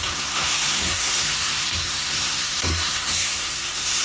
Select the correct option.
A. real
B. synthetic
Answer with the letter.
B